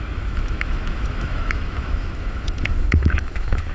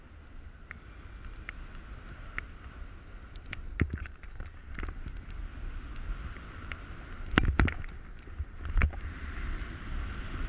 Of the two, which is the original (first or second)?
second